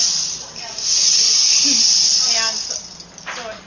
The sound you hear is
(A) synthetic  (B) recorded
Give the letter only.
B